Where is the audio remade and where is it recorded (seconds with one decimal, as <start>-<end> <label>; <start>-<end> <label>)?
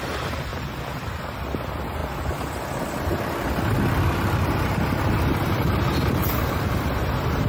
0.0-7.5 recorded